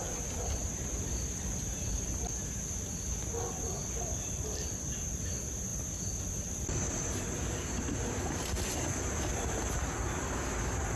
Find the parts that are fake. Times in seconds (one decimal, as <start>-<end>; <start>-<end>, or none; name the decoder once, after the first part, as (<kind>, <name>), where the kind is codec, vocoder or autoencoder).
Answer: none